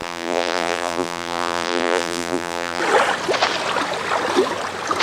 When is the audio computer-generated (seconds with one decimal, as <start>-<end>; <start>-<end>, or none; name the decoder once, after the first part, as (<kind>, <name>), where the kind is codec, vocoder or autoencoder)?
0.0-2.8 (vocoder, BigVGAN v2)